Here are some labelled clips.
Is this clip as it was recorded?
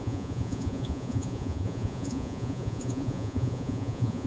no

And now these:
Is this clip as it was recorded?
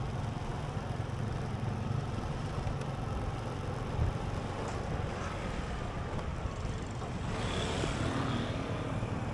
yes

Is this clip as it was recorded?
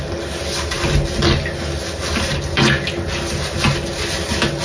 yes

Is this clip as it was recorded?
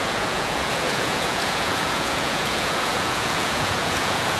no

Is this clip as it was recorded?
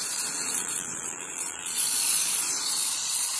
no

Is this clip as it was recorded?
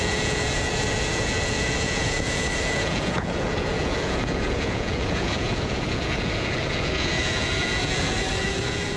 no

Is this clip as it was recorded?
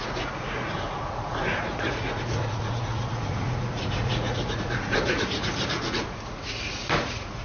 no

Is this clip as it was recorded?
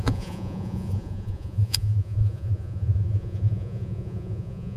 no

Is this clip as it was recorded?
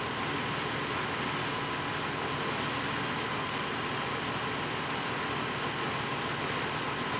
yes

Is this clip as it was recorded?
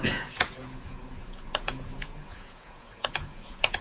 no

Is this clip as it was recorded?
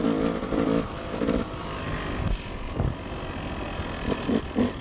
yes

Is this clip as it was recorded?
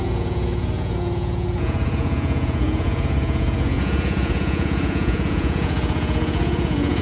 no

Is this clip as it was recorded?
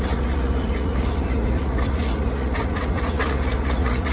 no